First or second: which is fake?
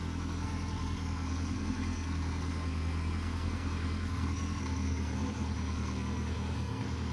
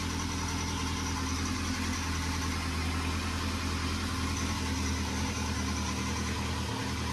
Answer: first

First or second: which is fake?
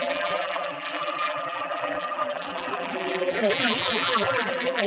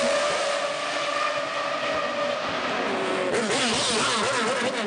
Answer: first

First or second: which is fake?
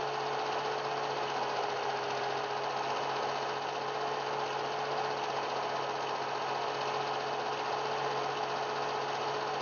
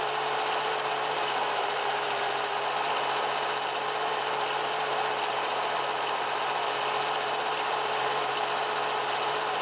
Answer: second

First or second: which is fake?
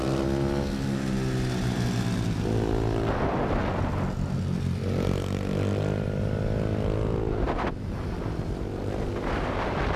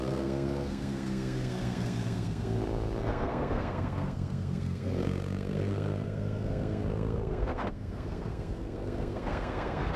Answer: second